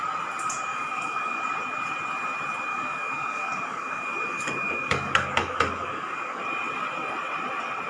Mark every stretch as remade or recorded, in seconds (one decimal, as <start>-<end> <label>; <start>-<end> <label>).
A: 0.0-0.7 recorded; 0.7-1.4 remade; 1.4-2.7 recorded; 2.7-6.4 remade; 6.4-7.9 recorded